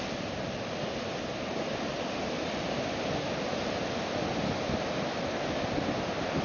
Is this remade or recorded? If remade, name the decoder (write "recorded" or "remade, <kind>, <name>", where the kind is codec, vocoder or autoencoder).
recorded